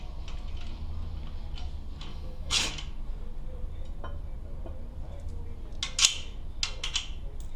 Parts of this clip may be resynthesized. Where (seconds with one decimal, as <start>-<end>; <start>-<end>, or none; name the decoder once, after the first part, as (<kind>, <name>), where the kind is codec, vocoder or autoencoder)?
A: 2.1-2.7 (autoencoder, DAC-VAE)